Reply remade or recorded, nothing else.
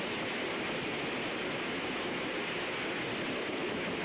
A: recorded